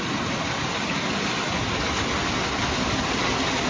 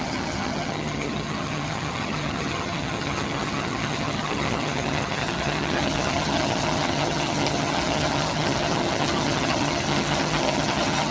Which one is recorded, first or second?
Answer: first